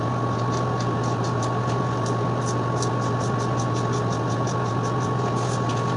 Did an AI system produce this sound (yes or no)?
no